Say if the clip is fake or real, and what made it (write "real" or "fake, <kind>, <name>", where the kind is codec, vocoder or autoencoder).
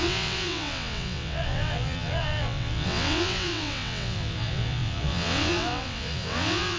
fake, vocoder, WaveNeXt